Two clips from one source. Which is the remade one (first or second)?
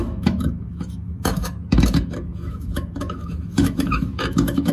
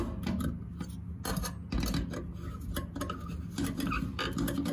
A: first